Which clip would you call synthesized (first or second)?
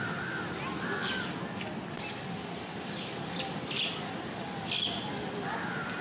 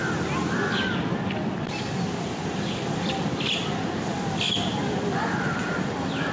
second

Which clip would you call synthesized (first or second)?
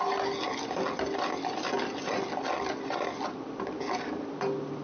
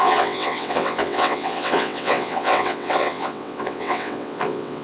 second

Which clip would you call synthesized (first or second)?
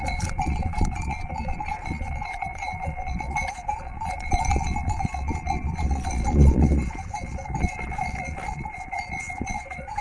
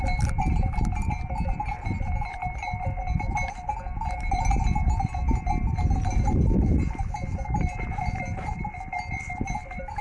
first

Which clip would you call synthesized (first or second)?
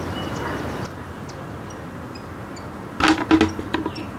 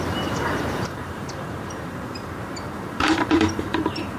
second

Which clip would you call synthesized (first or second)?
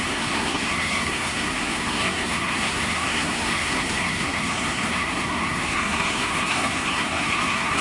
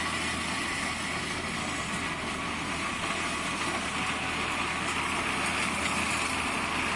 first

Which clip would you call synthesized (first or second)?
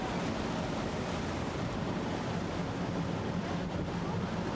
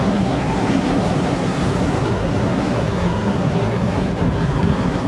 second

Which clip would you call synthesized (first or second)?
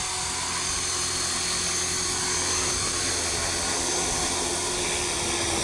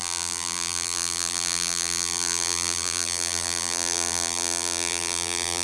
second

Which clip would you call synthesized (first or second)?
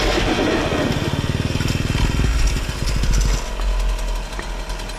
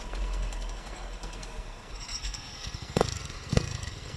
second